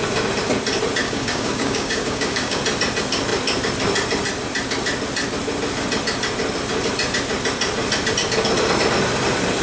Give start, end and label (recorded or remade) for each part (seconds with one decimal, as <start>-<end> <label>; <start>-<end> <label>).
0.0-1.0 recorded; 1.0-2.6 remade; 2.6-9.6 recorded